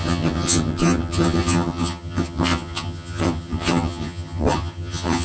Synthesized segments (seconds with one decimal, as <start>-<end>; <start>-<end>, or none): 0.0-5.2